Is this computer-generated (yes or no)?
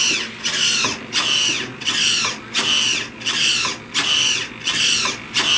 no